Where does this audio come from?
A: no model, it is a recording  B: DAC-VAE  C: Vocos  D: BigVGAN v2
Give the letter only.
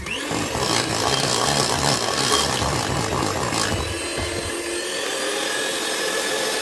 A